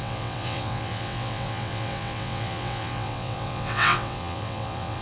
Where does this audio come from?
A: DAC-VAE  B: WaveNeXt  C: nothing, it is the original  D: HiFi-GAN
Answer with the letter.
B